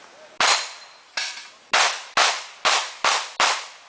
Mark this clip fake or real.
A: real